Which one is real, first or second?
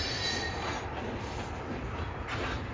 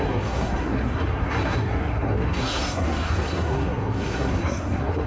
first